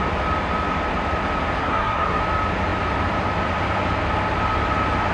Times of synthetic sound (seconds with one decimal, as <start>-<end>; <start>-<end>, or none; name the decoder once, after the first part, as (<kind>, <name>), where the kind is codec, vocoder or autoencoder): 1.6-2.2 (codec, SNAC)